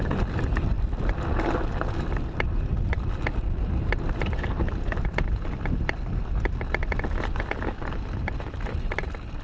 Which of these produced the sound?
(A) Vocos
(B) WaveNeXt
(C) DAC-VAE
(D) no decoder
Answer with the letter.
D